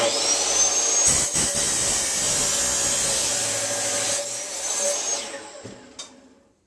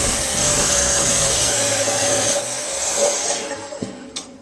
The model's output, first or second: second